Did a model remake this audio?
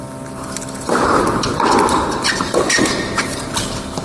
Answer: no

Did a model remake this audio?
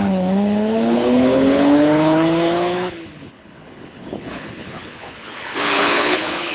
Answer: yes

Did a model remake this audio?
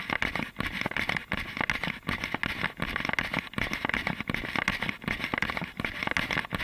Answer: no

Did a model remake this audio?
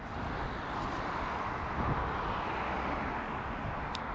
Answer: no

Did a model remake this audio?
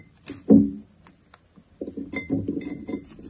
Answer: no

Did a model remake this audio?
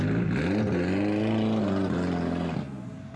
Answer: no